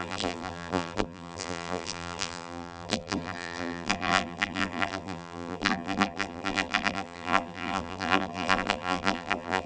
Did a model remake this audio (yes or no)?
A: yes